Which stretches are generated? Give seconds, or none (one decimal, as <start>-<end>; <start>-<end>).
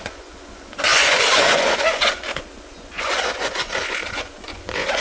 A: 0.0-5.0